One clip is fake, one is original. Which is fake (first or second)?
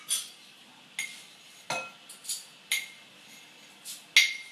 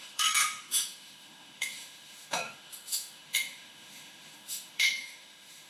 second